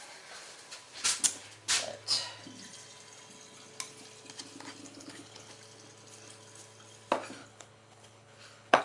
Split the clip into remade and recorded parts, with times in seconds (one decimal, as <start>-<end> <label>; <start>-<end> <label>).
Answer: 0.0-4.8 recorded; 4.8-5.5 remade; 5.5-7.4 recorded; 7.4-8.8 remade